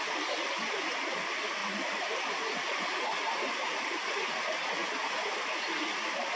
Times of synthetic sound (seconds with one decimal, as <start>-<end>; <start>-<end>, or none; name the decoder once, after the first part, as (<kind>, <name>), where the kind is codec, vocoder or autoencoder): 1.6-4.3 (vocoder, BigVGAN v2); 4.8-5.6

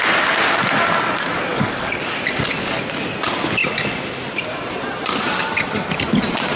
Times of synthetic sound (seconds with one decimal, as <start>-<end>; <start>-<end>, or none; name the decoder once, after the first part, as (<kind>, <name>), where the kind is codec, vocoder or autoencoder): 1.5-2.2 (codec, DAC)

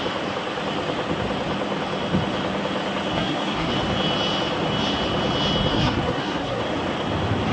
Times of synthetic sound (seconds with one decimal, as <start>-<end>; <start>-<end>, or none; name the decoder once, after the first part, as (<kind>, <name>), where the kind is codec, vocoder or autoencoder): 3.1-3.7 (codec, SNAC); 5.7-6.6

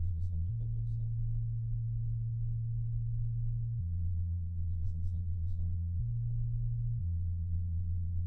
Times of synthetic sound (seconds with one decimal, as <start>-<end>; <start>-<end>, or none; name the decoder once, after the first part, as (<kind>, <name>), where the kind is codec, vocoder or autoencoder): 0.0-0.5 (vocoder, Vocos); 3.8-6.0; 7.0-8.3

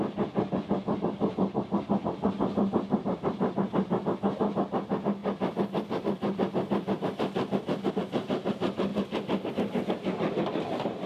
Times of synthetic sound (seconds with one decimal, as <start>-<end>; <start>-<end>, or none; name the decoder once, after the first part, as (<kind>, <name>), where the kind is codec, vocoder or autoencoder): none